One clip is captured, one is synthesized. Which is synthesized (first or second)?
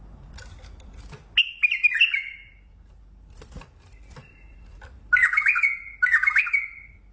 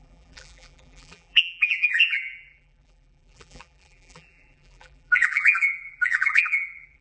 second